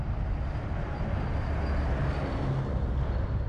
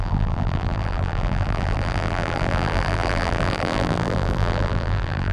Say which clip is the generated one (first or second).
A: second